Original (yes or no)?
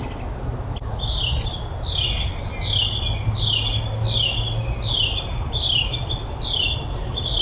yes